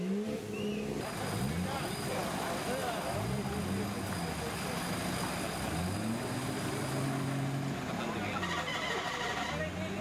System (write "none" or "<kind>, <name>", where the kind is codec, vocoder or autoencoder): none